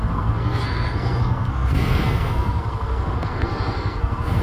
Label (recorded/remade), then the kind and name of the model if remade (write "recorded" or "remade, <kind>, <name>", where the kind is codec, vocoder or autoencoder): remade, codec, SNAC